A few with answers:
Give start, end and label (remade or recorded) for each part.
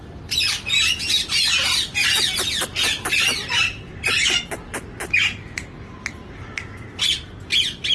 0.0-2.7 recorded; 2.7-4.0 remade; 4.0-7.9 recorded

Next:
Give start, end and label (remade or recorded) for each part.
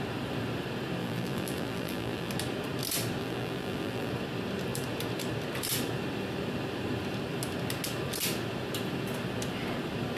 0.0-1.0 recorded; 1.0-2.3 remade; 2.3-3.2 recorded; 3.2-4.1 remade; 4.1-10.2 recorded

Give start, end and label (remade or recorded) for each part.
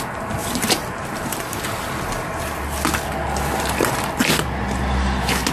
0.0-0.4 recorded; 0.4-1.6 remade; 1.6-5.5 recorded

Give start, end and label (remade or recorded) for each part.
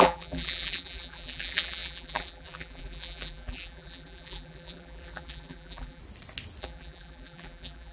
0.0-6.0 remade; 6.0-6.6 recorded; 6.6-7.9 remade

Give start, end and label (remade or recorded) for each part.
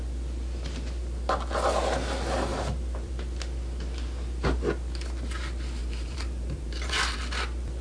0.0-2.5 recorded; 2.5-3.1 remade; 3.1-5.8 recorded; 5.8-7.2 remade; 7.2-7.8 recorded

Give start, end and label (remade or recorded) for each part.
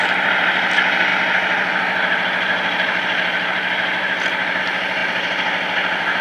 0.0-6.2 recorded